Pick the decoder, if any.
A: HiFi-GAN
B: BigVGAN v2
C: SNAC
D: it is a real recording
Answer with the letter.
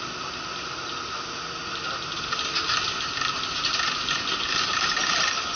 D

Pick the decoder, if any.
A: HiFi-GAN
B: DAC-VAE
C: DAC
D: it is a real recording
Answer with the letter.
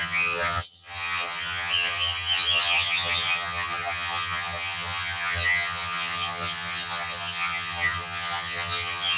A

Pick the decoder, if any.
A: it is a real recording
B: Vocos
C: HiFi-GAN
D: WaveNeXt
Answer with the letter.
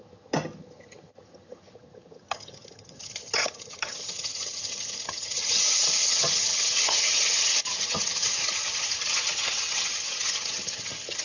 C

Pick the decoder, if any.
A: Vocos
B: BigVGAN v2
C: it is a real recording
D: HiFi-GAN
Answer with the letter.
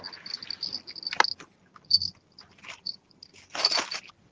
C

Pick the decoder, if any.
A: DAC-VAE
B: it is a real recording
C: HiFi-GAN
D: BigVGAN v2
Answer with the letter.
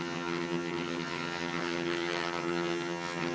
C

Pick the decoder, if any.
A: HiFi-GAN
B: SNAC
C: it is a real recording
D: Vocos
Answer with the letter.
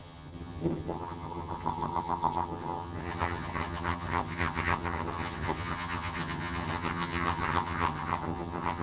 A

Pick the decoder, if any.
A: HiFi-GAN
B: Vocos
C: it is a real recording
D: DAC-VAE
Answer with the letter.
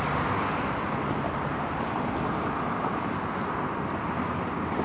C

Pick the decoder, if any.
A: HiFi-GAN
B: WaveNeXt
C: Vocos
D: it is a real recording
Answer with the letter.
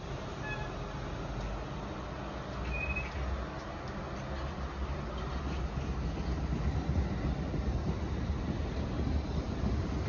D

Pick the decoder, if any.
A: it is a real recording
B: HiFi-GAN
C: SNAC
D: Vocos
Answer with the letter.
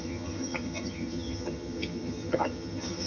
B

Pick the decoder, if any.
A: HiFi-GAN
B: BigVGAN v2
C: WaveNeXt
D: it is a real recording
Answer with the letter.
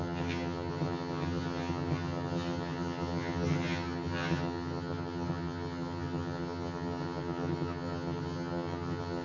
A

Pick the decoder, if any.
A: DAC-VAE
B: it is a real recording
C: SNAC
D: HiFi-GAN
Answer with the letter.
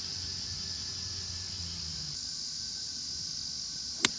B